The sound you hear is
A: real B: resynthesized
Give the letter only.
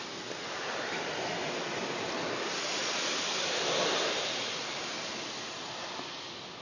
A